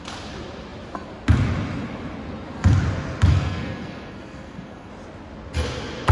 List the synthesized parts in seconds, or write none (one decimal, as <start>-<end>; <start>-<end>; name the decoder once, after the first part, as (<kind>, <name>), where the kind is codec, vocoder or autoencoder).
3.3-4.9 (codec, SNAC)